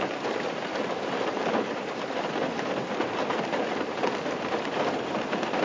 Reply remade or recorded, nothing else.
remade